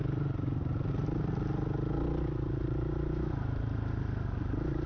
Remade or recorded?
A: recorded